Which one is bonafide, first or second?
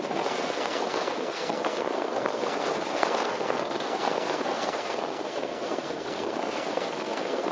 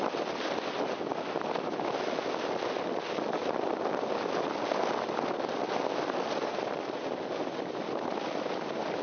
second